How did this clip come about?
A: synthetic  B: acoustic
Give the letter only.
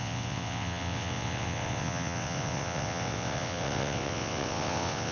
A